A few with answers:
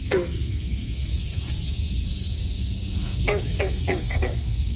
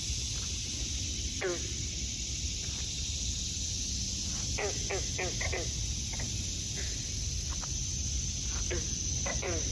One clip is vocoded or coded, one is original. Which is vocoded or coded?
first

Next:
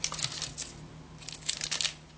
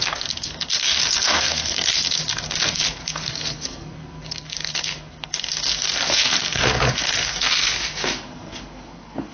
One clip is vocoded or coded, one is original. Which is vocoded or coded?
second